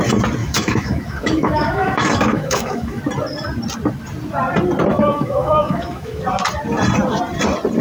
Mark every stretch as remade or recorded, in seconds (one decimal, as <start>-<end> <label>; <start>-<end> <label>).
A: 0.0-0.4 recorded; 0.4-3.0 remade; 3.0-4.9 recorded; 4.9-6.2 remade; 6.2-7.8 recorded